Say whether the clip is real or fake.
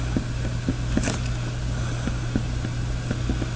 real